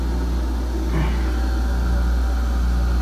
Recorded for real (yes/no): yes